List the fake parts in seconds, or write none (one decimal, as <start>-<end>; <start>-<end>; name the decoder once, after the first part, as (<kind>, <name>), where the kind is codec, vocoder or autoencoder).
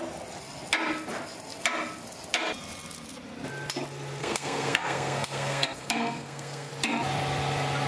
4.2-6.7 (codec, SNAC)